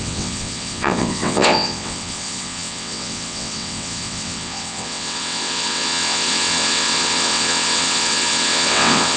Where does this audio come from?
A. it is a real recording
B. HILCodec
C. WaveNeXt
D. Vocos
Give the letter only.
C